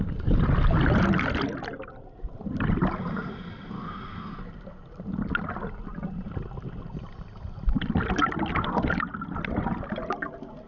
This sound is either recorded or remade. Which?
recorded